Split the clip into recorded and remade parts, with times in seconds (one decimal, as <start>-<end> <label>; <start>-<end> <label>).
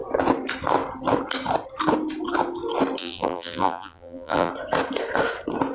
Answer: 0.0-3.0 recorded; 3.0-4.5 remade; 4.5-5.7 recorded